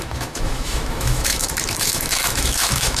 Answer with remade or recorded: remade